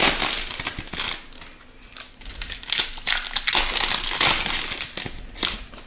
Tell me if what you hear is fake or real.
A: real